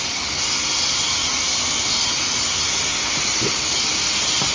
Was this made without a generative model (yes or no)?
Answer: yes